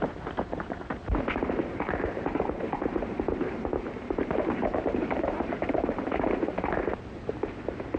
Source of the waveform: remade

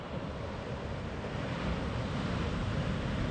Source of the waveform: recorded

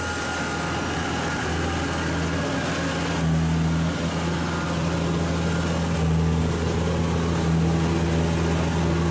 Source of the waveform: recorded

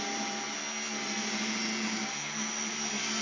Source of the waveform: recorded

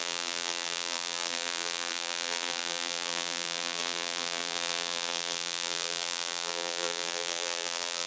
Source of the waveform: remade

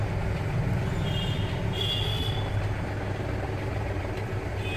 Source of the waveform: recorded